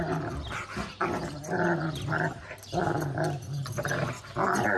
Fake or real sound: real